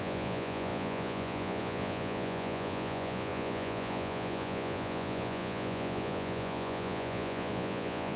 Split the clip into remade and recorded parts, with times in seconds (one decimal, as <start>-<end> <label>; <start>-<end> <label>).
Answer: 0.0-8.2 remade